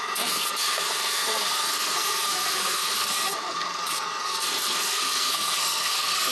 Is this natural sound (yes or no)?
no